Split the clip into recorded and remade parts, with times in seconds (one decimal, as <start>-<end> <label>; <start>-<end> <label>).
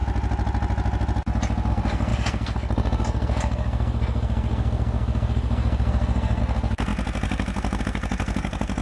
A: 0.0-1.7 recorded; 1.7-8.8 remade